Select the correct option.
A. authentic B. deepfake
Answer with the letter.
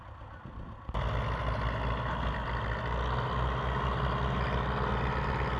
A